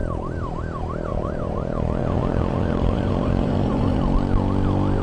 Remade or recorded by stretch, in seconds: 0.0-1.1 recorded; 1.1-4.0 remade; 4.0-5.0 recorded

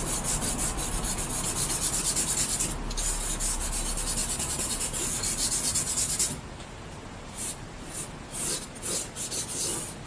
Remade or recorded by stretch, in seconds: 0.0-4.2 recorded; 4.2-5.5 remade; 5.5-10.1 recorded

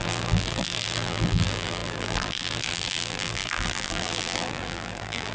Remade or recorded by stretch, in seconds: 0.0-5.3 remade

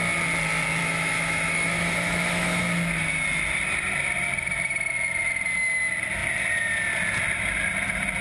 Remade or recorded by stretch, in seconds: 0.0-0.8 recorded; 0.8-2.6 remade; 2.6-8.2 recorded

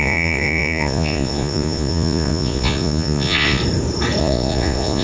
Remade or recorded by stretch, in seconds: 0.0-3.6 remade; 3.6-4.2 recorded; 4.2-5.0 remade

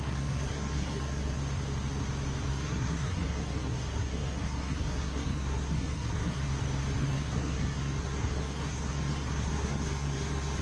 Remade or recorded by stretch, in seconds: 0.0-1.4 remade; 1.4-2.5 recorded; 2.5-6.5 remade; 6.5-7.0 recorded; 7.0-10.6 remade

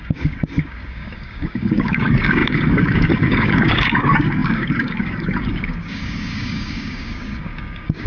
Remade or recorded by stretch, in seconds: 0.0-8.1 remade

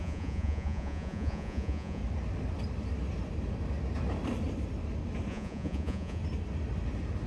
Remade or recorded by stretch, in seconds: 0.0-2.0 remade; 2.0-5.3 recorded; 5.3-6.2 remade; 6.2-7.3 recorded